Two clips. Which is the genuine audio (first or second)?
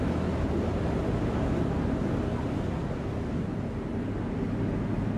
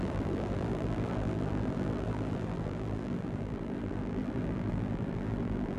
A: first